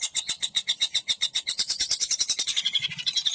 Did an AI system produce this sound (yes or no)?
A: yes